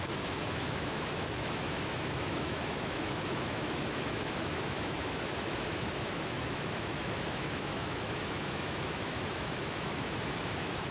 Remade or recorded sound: remade